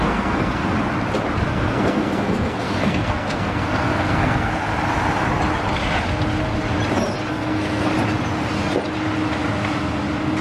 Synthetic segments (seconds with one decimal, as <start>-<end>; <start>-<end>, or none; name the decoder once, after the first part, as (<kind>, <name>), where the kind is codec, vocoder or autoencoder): 0.0-0.6 (codec, SNAC); 1.5-4.7; 7.3-7.9